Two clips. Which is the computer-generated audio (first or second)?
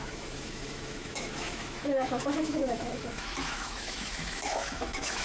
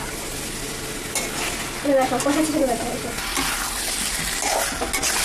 first